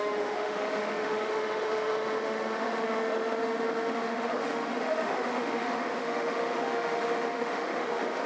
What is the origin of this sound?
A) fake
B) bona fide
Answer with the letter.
A